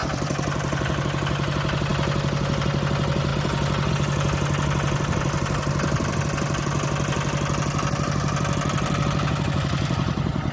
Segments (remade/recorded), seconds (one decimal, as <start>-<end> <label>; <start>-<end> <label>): 0.0-1.0 remade; 1.0-10.5 recorded